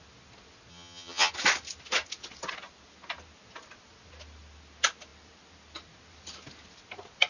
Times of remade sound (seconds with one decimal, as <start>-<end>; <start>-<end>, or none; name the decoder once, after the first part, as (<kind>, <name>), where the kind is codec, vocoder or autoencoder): 0.7-1.3 (vocoder, HiFi-GAN)